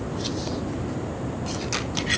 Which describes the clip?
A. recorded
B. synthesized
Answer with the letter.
A